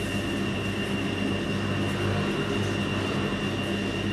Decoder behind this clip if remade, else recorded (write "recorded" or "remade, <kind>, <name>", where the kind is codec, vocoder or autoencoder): recorded